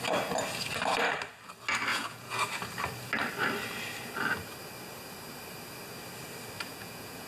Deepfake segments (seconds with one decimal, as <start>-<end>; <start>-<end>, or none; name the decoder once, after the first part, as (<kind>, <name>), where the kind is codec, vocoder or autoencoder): 1.9-2.4 (vocoder, Vocos); 6.7-7.3